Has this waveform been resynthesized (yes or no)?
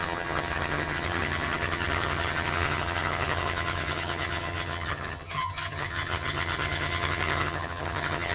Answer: yes